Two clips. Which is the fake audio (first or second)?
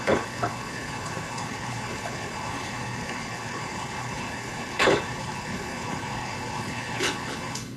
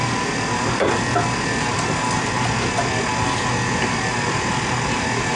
first